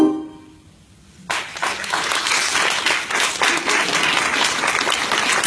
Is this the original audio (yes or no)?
yes